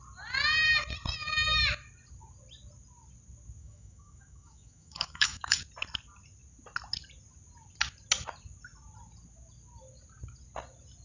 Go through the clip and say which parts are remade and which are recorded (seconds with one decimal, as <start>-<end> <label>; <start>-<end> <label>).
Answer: 0.0-3.6 recorded; 3.6-5.6 remade; 5.6-11.0 recorded